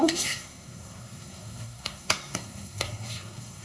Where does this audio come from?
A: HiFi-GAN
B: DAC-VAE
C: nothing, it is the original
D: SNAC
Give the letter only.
D